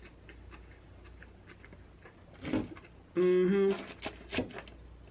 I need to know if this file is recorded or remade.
recorded